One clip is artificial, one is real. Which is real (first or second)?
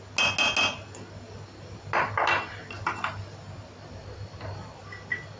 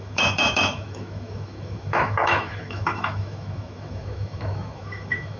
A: first